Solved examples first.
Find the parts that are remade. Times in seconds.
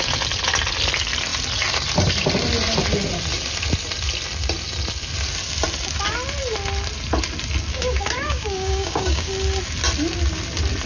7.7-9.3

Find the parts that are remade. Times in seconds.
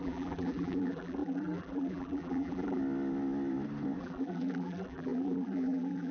0.0-2.8; 4.0-6.1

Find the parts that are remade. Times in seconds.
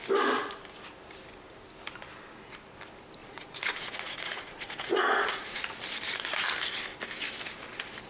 3.2-5.6